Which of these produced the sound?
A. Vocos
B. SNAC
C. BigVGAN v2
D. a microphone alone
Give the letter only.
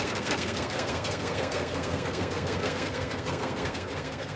B